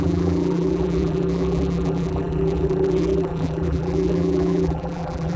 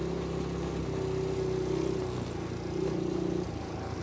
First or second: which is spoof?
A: first